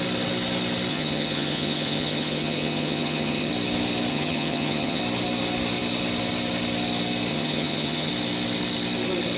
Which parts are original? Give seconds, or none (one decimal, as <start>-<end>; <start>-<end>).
0.0-0.9; 3.5-4.1; 5.0-7.3; 8.1-9.4